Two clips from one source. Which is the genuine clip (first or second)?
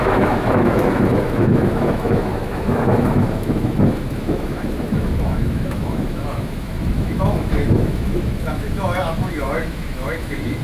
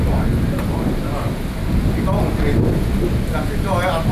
second